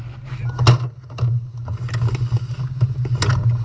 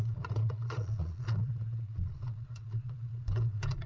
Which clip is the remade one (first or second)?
second